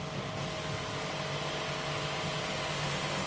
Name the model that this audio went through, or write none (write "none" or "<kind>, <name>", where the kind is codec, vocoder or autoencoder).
none